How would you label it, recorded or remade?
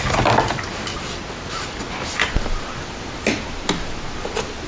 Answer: recorded